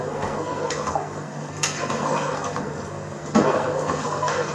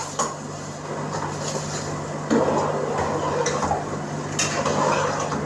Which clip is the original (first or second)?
second